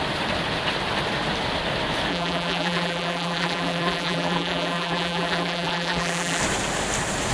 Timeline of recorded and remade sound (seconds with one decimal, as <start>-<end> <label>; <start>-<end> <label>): 0.0-2.1 recorded; 2.1-6.4 remade; 6.4-7.3 recorded